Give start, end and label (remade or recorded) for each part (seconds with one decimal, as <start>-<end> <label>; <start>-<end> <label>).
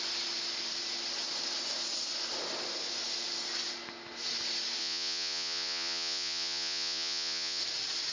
0.0-4.8 recorded; 4.8-7.6 remade; 7.6-8.1 recorded